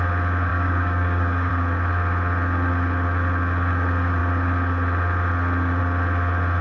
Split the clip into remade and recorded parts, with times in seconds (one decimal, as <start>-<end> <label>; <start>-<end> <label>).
0.0-0.5 recorded; 0.5-1.5 remade; 1.5-6.6 recorded